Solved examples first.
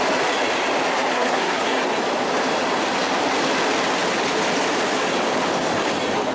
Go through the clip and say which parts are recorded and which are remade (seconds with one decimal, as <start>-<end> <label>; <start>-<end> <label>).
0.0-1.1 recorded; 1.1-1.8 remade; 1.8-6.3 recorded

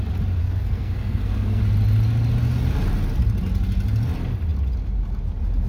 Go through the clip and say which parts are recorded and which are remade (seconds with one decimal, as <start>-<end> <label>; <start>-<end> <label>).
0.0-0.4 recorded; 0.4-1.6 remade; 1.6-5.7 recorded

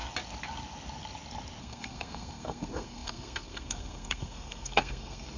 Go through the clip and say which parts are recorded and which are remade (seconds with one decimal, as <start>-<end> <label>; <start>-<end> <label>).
0.0-1.6 recorded; 1.6-5.4 remade

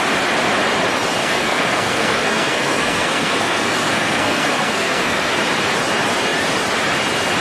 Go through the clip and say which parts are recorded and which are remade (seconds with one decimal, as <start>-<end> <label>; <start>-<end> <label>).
0.0-1.2 recorded; 1.2-5.4 remade; 5.4-7.4 recorded

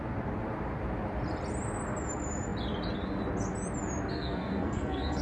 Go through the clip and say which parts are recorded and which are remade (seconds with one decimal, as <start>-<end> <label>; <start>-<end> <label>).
0.0-4.1 recorded; 4.1-5.2 remade